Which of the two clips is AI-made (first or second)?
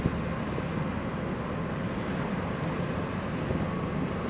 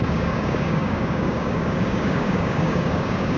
second